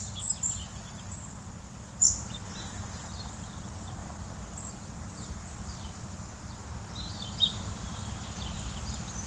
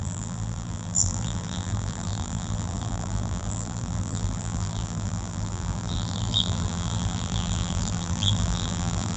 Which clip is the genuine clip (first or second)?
first